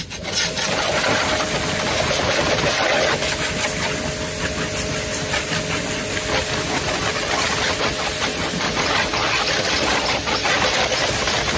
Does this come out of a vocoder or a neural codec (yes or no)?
no